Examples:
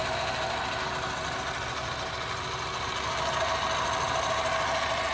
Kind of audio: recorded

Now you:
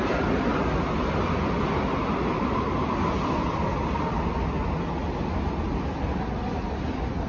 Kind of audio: recorded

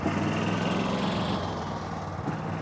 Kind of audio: recorded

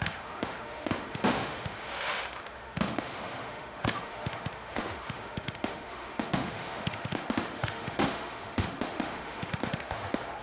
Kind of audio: remade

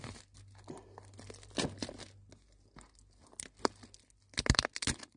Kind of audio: recorded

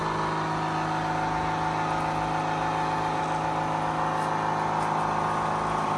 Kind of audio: recorded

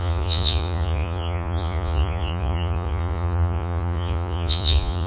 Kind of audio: remade